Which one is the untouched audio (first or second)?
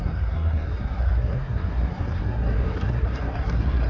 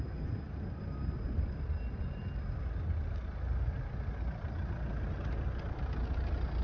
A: second